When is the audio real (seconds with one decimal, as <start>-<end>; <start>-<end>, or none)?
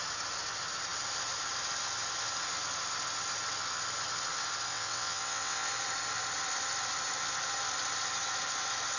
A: 0.0-4.7; 5.7-9.0